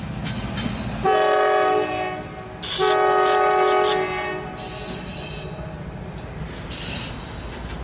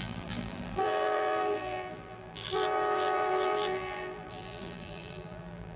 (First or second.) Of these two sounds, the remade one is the second